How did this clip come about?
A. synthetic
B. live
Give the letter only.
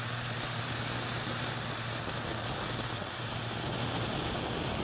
B